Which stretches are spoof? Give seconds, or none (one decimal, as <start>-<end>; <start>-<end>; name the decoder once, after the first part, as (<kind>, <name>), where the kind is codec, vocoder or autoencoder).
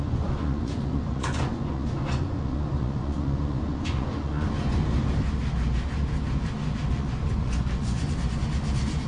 0.0-4.8 (vocoder, Vocos); 6.9-8.4